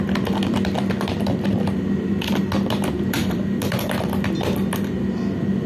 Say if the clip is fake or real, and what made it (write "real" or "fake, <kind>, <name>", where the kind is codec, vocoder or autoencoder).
real